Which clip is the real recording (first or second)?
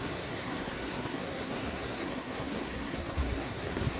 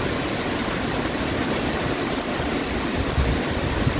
second